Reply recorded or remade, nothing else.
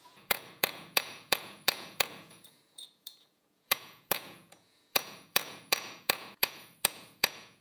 remade